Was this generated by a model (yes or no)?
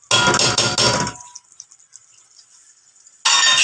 no